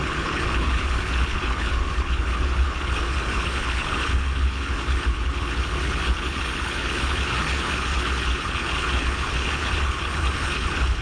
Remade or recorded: remade